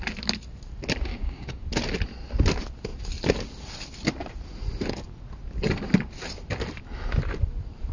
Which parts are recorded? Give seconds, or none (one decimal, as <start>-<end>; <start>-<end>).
0.0-1.1; 1.6-7.9

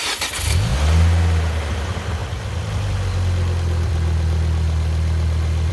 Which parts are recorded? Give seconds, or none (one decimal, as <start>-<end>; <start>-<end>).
0.0-5.7

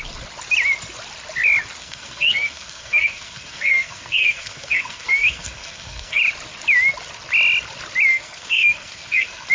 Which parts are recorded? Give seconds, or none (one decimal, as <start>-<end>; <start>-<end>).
0.0-1.8; 6.2-8.1

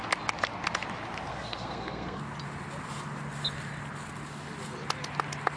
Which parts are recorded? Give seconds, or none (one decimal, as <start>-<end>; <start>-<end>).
0.0-1.3; 2.2-5.6

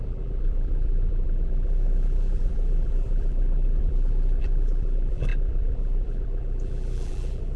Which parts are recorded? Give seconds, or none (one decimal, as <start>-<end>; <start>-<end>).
none

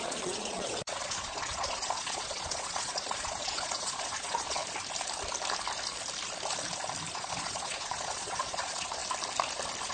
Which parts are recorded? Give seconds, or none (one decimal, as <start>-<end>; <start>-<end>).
4.6-7.1; 9.0-9.9

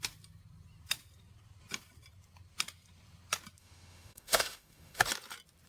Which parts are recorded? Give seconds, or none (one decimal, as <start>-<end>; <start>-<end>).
0.0-3.6; 5.0-5.7

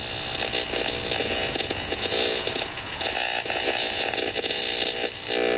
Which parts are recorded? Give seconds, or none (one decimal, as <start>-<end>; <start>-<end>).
0.0-1.2; 4.6-5.6